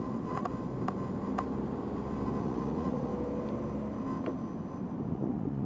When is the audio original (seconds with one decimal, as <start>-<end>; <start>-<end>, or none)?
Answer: 0.5-2.4; 3.1-5.1